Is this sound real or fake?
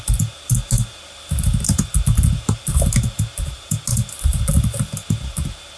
real